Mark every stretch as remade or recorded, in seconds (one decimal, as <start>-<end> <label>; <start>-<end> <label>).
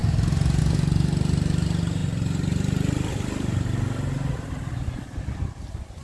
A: 0.0-6.0 recorded